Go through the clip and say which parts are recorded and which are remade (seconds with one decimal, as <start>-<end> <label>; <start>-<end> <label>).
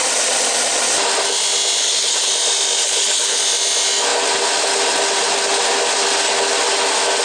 0.0-1.8 recorded; 1.8-2.3 remade; 2.3-2.8 recorded; 2.8-3.4 remade; 3.4-7.2 recorded